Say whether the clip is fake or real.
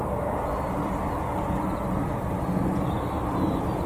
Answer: real